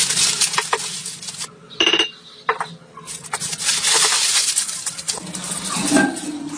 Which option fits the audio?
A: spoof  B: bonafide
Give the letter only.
B